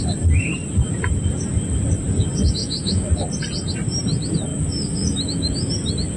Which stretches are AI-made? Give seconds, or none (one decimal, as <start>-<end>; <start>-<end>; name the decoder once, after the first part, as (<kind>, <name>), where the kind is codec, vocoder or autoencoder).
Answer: 2.6-3.1 (autoencoder, DAC-VAE); 4.5-5.7